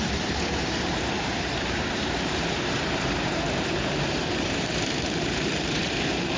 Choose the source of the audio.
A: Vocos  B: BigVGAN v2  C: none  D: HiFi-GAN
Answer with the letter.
B